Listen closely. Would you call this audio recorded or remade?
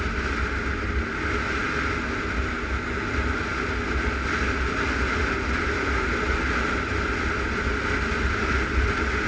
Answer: recorded